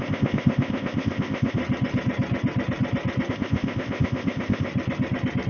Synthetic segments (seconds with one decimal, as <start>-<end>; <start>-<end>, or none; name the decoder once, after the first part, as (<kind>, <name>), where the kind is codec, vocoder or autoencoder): 0.0-1.6 (codec, ZipCodec); 3.3-4.7